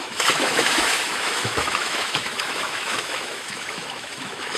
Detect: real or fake fake